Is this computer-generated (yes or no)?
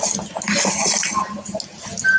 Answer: no